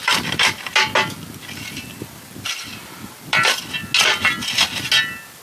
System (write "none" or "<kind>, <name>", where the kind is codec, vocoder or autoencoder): none